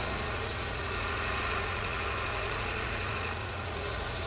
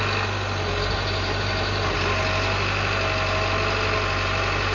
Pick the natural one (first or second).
second